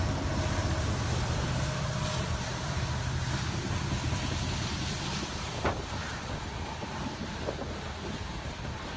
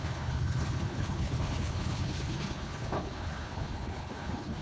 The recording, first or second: first